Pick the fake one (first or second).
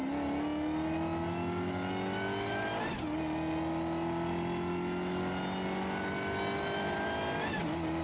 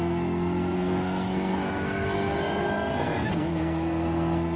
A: second